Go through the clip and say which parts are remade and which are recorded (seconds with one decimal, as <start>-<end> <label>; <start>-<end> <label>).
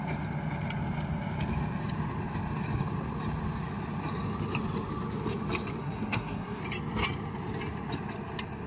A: 0.0-5.8 recorded; 5.8-6.6 remade; 6.6-8.7 recorded